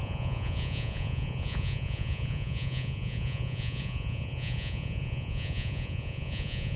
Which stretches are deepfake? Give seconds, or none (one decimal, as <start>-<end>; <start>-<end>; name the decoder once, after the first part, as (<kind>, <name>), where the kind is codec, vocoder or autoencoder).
0.0-6.8 (vocoder, Vocos)